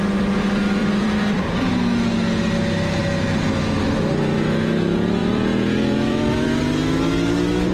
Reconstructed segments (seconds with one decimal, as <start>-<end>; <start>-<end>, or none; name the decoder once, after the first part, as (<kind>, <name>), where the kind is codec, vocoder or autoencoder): 0.8-1.7 (vocoder, BigVGAN v2); 5.2-6.6